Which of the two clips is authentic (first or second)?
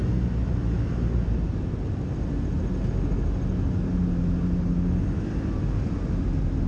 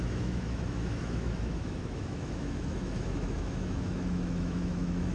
first